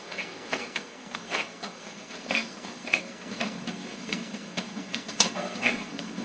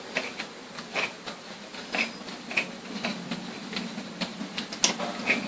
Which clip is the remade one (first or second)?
first